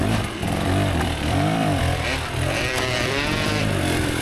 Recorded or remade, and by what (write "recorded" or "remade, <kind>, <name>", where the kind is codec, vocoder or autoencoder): remade, vocoder, BigVGAN v2